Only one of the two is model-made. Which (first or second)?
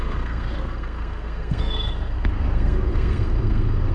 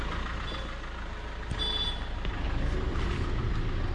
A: first